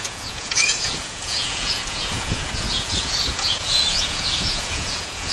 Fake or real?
fake